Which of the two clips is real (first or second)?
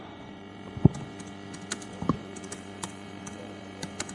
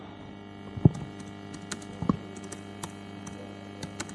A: second